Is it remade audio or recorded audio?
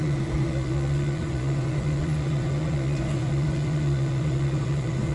remade